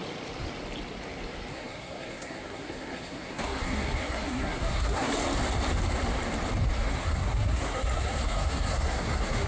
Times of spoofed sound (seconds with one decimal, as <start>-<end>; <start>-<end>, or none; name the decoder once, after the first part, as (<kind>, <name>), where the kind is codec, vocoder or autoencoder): 1.5-5.1 (codec, SNAC); 7.0-9.5